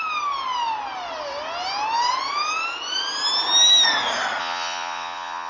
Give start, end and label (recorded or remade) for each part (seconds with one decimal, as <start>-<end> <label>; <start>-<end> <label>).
0.0-4.4 recorded; 4.4-5.5 remade